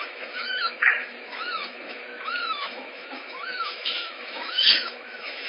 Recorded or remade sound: remade